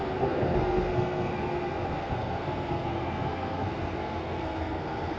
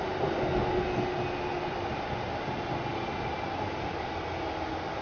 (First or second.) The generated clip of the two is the first